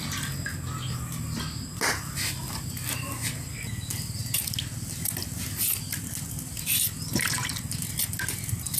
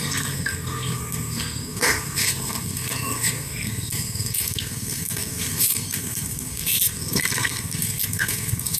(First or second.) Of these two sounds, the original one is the first